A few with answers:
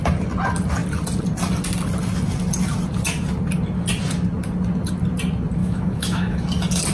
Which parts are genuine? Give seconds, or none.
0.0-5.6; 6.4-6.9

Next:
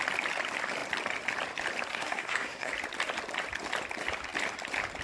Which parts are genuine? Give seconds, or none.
0.0-1.9; 2.7-5.0

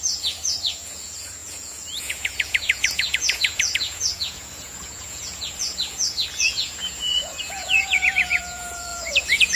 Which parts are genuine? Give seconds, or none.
none

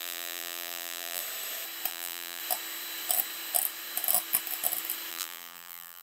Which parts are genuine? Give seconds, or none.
1.2-1.9; 2.4-5.1

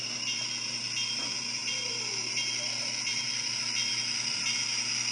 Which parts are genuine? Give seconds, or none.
0.0-5.1

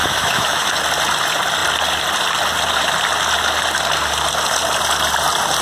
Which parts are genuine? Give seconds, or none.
0.7-5.6

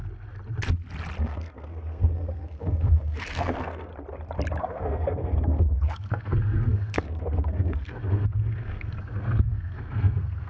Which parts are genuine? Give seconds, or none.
0.0-1.2; 3.9-4.6